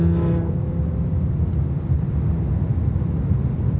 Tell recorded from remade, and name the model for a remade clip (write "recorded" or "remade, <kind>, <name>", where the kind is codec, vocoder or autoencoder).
recorded